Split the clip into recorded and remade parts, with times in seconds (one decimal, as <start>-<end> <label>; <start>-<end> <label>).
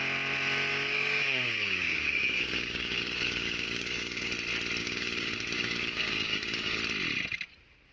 0.0-0.7 recorded; 0.7-4.3 remade; 4.3-4.8 recorded; 4.8-6.8 remade; 6.8-7.9 recorded